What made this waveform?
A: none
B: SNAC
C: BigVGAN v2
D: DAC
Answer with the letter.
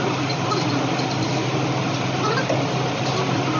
A